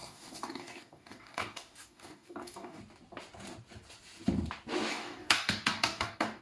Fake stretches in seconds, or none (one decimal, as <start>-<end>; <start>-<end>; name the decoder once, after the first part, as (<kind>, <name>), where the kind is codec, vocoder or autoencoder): 0.0-2.8 (codec, DAC); 4.9-6.4